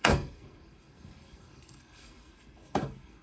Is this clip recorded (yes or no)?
no